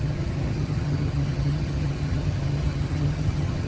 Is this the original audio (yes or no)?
no